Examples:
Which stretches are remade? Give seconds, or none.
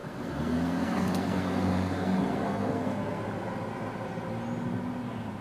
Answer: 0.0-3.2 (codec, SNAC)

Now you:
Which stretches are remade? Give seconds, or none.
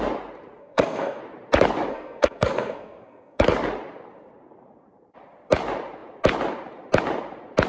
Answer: 0.6-1.2 (codec, SNAC); 1.9-3.4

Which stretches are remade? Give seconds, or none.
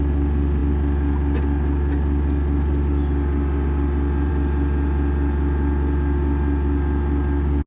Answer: none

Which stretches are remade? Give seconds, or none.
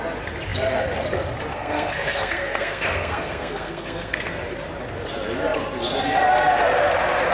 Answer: 1.5-4.2 (codec, SNAC)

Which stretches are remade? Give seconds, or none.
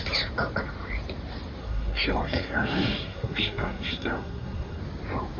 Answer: 1.6-4.8 (codec, SNAC)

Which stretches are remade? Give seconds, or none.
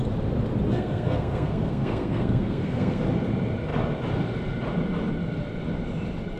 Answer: 0.7-3.0 (codec, SNAC)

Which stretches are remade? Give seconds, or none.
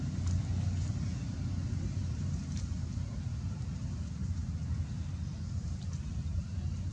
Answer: none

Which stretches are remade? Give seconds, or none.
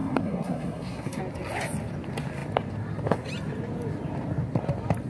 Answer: 0.0-1.2 (codec, SNAC)